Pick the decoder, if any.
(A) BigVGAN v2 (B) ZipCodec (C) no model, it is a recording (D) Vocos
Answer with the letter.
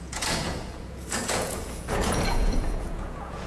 D